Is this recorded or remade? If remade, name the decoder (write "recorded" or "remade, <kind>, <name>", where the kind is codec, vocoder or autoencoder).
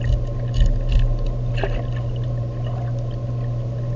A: recorded